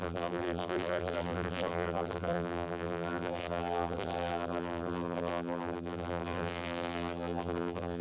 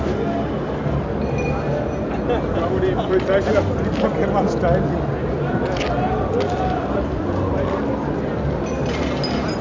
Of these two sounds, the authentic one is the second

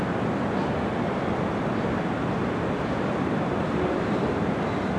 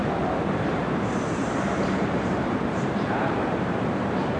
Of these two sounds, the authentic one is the first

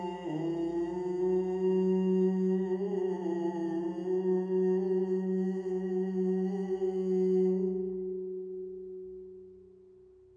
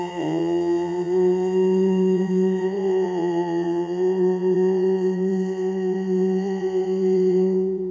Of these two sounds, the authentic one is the first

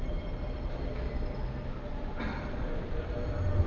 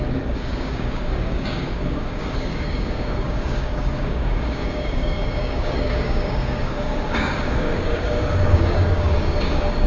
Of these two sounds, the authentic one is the first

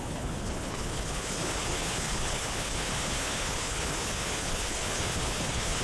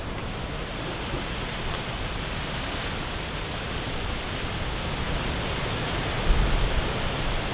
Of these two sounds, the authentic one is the second